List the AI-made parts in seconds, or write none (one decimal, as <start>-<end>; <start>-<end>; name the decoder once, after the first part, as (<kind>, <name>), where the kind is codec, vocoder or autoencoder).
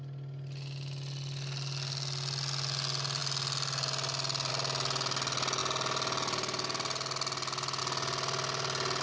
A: none